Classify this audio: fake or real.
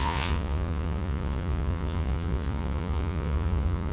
fake